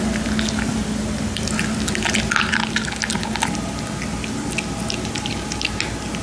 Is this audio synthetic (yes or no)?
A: no